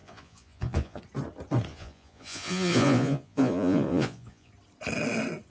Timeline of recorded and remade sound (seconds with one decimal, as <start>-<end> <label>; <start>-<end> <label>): 0.0-1.0 remade; 1.0-1.7 recorded; 1.7-4.5 remade; 4.5-5.5 recorded